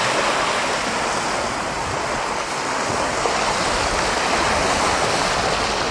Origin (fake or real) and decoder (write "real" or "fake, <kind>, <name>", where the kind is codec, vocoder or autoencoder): real